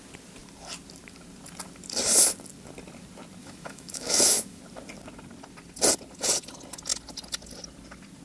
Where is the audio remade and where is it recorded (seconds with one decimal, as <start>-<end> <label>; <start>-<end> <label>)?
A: 0.0-3.4 recorded; 3.4-4.6 remade; 4.6-8.2 recorded